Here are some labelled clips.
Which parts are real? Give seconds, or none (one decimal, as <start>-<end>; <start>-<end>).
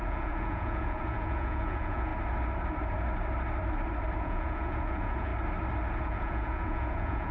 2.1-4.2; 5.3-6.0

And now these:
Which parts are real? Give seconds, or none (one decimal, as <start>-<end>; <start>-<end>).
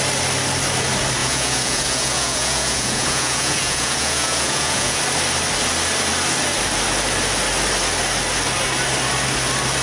0.0-1.2; 5.0-9.8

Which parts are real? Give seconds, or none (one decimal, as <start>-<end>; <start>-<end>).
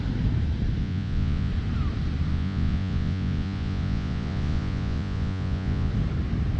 0.0-0.8; 1.5-2.3; 5.9-6.6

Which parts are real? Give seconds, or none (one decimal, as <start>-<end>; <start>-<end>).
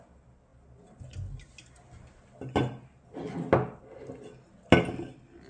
0.0-5.5